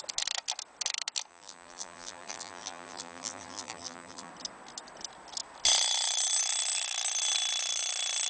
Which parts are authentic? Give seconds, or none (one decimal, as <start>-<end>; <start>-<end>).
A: 0.0-1.3; 4.3-8.3